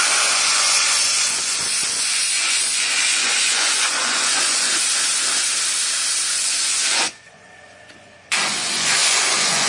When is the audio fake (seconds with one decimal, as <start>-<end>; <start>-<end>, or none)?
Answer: 0.0-4.7; 6.3-9.7